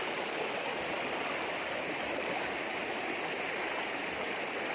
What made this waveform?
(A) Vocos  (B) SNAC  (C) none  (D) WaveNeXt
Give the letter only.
C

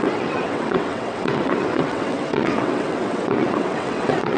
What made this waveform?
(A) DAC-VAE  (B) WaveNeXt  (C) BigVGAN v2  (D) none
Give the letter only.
B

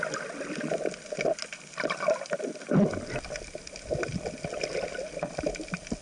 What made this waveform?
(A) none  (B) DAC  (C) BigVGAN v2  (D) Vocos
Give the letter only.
A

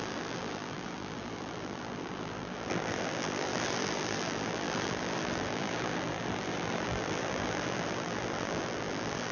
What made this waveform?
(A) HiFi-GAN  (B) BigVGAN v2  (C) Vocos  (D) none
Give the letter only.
B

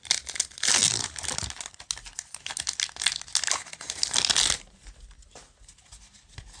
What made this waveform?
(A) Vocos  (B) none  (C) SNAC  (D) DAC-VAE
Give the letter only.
B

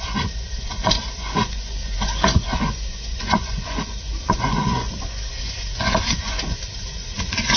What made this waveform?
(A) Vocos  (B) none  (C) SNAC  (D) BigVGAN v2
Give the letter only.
A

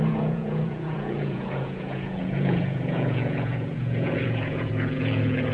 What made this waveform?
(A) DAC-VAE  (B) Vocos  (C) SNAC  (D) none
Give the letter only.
B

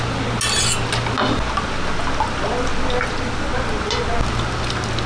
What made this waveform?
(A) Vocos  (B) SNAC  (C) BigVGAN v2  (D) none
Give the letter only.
D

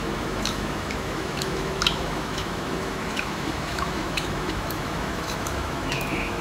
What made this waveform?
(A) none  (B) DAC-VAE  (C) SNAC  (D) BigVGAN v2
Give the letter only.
B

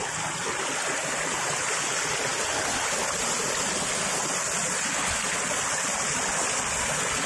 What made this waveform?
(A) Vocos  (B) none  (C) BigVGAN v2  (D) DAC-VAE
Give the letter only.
B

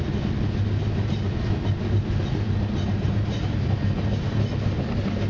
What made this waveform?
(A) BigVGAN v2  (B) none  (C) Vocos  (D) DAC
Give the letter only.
B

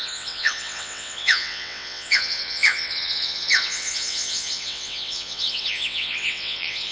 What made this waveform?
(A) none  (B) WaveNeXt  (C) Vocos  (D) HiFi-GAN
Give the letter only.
B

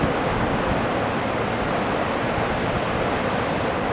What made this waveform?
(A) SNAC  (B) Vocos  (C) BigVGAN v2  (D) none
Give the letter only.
D